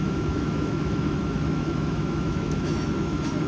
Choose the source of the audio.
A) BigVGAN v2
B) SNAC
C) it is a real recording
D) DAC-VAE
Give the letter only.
D